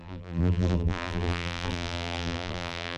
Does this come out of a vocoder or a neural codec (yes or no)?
yes